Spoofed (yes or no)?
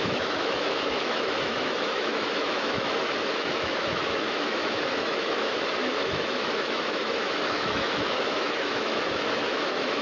yes